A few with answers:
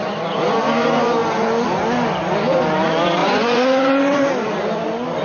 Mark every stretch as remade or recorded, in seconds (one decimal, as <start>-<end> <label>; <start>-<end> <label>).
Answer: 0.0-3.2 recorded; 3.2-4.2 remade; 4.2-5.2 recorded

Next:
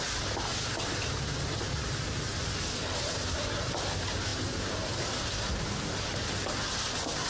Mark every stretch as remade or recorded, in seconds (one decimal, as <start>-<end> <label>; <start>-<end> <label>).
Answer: 0.0-7.3 recorded

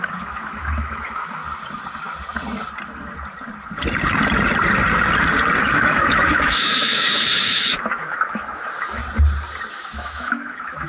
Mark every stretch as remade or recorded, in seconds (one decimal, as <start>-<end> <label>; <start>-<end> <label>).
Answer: 0.0-1.4 remade; 1.4-5.6 recorded; 5.6-9.0 remade; 9.0-9.7 recorded; 9.7-10.9 remade

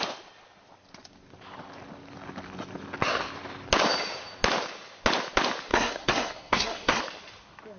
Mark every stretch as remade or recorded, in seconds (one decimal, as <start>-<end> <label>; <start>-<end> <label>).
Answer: 0.0-5.7 recorded; 5.7-7.0 remade; 7.0-7.8 recorded

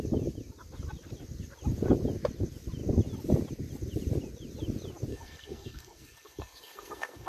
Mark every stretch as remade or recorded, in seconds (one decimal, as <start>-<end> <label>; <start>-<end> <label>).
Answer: 0.0-5.1 recorded; 5.1-7.3 remade

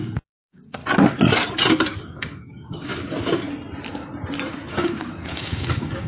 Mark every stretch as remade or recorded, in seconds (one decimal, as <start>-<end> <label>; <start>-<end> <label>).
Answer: 0.0-0.8 remade; 0.8-2.0 recorded; 2.0-2.9 remade; 2.9-4.7 recorded; 4.7-6.1 remade